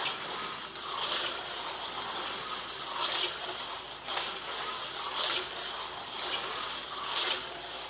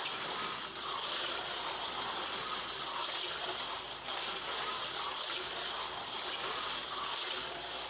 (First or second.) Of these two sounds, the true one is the first